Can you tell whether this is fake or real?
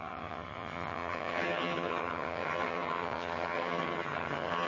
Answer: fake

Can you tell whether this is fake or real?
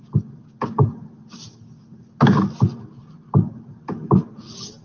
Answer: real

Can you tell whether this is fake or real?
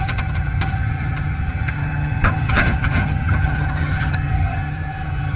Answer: fake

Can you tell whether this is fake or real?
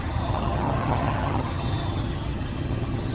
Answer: fake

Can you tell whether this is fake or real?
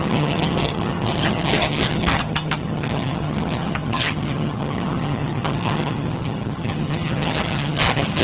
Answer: fake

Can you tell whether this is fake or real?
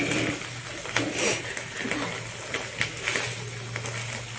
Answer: real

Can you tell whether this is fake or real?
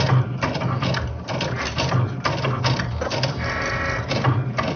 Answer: real